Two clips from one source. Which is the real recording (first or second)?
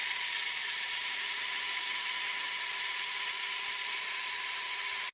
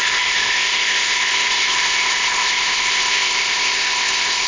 first